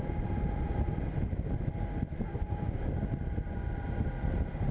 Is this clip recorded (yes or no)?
yes